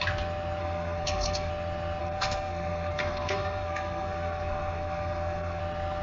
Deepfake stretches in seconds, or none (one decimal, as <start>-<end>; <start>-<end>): 0.6-1.5; 2.0-5.6